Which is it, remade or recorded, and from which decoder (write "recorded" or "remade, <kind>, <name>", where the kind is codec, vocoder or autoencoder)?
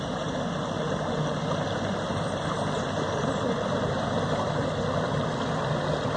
recorded